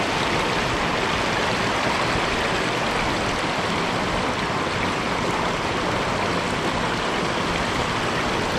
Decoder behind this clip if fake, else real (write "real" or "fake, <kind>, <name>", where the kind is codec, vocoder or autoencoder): real